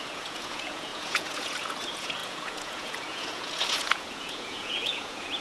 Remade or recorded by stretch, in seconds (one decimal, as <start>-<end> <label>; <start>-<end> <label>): 0.0-5.4 remade